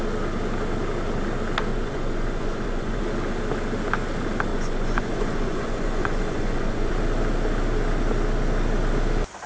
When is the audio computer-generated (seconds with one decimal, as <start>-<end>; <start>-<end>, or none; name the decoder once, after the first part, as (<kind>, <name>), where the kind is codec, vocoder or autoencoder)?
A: 1.7-3.0 (vocoder, Vocos); 4.5-6.9